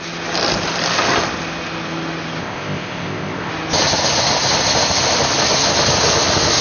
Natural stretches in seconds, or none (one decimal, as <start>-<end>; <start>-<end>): 0.0-2.4; 3.5-6.6